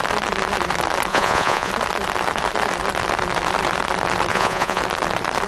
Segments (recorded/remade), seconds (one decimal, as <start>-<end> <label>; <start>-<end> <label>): 0.0-1.1 recorded; 1.1-1.7 remade; 1.7-4.3 recorded; 4.3-4.8 remade; 4.8-5.5 recorded